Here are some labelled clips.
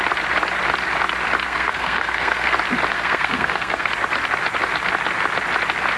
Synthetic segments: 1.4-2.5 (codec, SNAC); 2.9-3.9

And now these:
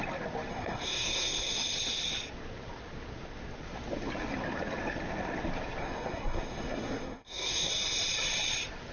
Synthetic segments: 0.5-1.5 (codec, SNAC); 5.8-7.7